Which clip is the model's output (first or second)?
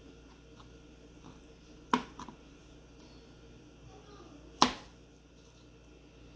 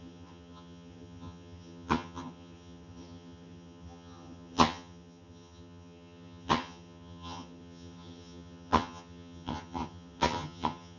second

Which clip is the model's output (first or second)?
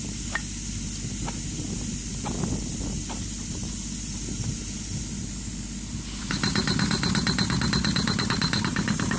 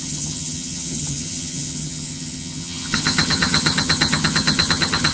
second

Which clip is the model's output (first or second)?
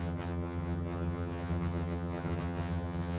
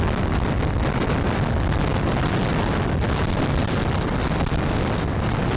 first